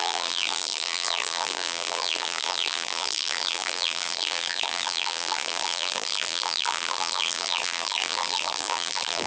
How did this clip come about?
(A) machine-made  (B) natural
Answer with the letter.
A